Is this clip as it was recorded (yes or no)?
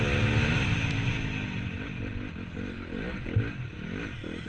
yes